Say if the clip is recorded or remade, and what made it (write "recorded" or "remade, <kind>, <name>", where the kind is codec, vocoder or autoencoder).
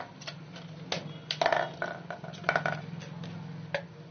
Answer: recorded